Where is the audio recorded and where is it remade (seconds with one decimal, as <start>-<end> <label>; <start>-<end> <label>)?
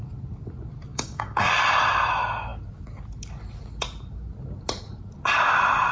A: 0.0-0.9 recorded; 0.9-1.5 remade; 1.5-5.9 recorded